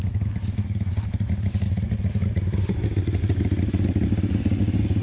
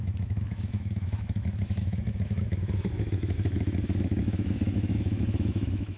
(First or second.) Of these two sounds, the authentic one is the first